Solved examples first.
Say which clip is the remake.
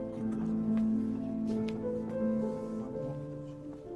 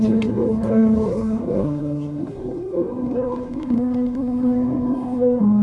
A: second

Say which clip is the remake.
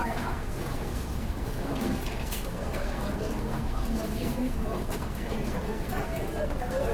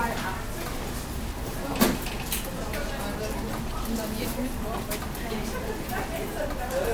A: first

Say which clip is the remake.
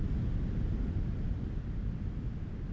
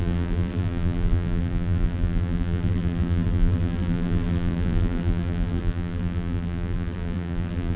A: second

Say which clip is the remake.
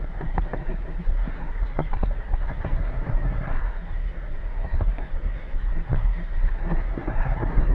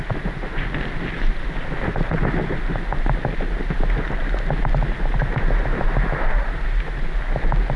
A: first